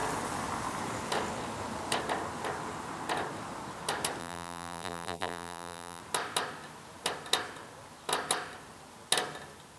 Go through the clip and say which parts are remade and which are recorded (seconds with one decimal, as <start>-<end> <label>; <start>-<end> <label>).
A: 0.0-4.2 recorded; 4.2-6.0 remade; 6.0-9.8 recorded